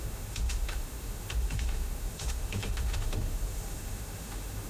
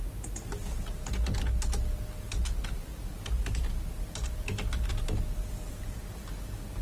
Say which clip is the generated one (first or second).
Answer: first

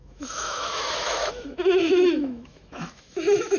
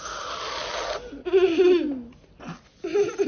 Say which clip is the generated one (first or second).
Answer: first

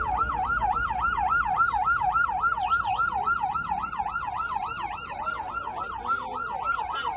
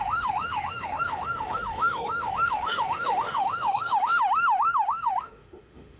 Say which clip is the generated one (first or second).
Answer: second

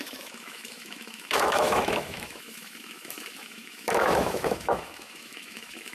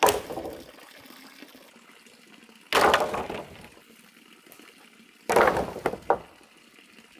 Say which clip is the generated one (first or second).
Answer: first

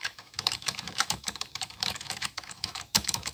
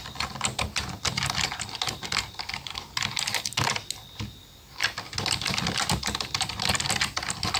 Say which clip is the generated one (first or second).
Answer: first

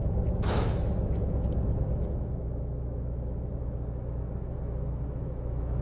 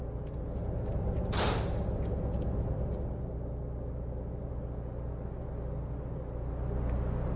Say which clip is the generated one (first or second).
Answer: first